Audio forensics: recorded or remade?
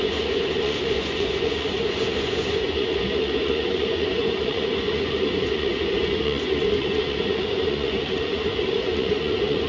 remade